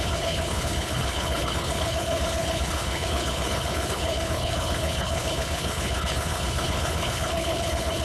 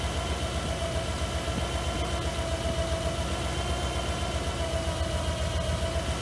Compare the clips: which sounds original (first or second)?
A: second